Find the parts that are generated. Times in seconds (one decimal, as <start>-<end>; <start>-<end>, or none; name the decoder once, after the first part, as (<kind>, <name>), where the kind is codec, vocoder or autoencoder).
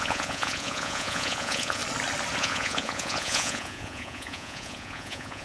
0.0-1.8 (vocoder, Vocos); 2.4-5.4